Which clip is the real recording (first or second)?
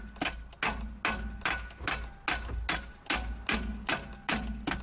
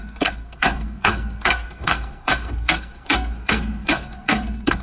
first